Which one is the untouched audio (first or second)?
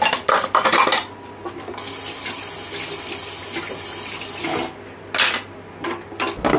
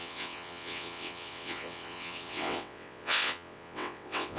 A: first